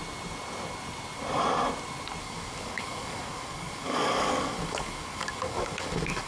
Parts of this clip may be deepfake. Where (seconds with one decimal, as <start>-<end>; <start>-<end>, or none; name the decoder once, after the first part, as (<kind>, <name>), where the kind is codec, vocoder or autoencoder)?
2.2-6.3 (codec, DAC)